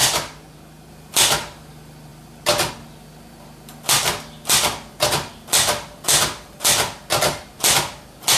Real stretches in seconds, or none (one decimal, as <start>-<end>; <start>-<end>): 0.0-8.4